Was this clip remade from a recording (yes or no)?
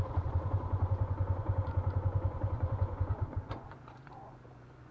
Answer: yes